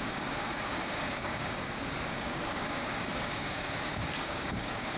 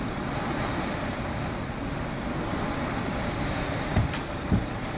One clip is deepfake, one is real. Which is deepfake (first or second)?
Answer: first